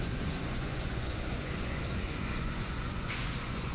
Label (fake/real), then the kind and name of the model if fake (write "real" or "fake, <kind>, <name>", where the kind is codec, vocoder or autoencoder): fake, vocoder, Vocos